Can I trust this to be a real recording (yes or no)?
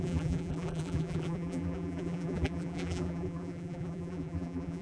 no